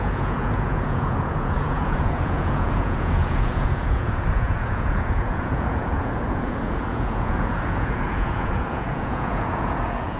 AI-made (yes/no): yes